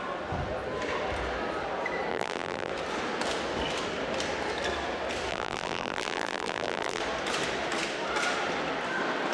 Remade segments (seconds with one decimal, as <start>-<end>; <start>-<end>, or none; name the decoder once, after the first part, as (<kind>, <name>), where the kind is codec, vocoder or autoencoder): 2.1-2.7 (vocoder, BigVGAN v2); 5.3-7.0